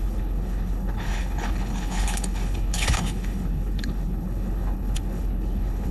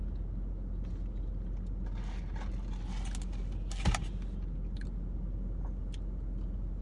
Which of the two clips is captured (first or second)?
second